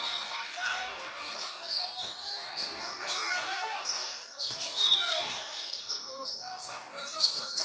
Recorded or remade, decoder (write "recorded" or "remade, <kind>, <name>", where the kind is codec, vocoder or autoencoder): remade, codec, DAC